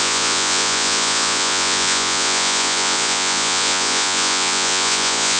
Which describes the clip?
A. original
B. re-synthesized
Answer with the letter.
B